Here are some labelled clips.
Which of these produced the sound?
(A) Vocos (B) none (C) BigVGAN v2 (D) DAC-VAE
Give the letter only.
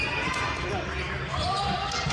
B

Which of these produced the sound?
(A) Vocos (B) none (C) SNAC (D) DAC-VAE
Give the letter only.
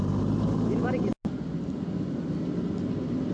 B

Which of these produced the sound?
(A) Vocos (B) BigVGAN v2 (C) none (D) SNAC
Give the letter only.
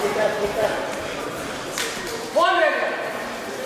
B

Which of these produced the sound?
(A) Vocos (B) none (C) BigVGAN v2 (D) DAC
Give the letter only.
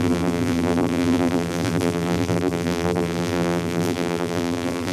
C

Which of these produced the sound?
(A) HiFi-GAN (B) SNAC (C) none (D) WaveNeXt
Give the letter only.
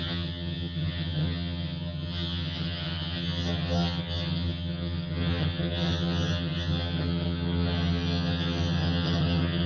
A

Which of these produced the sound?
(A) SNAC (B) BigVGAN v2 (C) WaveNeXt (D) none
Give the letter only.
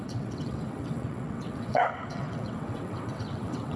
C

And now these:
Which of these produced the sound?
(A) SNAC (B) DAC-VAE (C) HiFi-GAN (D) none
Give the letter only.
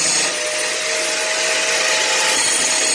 D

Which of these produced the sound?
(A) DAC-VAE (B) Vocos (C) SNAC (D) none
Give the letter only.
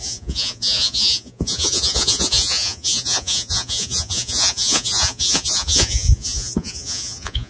B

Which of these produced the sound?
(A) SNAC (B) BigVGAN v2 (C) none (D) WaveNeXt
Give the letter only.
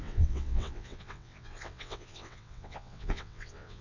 D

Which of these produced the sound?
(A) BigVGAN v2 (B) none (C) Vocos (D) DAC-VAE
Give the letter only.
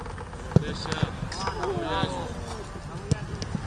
B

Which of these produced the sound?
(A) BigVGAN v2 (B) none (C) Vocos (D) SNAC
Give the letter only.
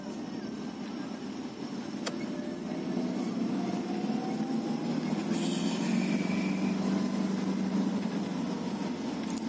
B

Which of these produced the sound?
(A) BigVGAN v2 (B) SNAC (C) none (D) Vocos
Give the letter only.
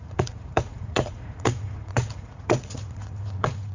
D